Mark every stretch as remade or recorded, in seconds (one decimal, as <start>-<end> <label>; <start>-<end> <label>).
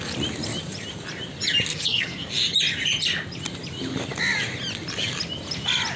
0.0-1.7 recorded; 1.7-2.3 remade; 2.3-6.0 recorded